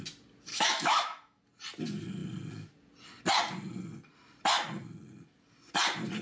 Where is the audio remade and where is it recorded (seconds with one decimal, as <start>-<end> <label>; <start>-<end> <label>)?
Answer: 0.0-0.5 recorded; 0.5-1.4 remade; 1.4-6.2 recorded